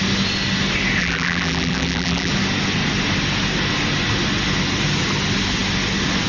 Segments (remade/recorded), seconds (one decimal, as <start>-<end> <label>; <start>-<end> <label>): 0.0-1.0 recorded; 1.0-2.3 remade; 2.3-6.3 recorded